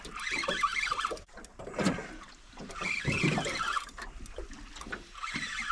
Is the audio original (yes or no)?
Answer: yes